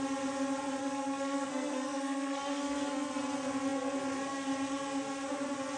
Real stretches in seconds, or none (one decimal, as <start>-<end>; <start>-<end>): 0.0-0.8; 3.2-5.8